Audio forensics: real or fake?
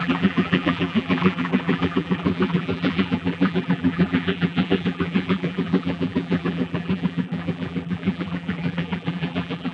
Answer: fake